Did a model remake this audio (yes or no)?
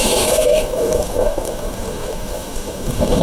yes